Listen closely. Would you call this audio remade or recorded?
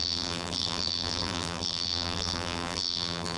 remade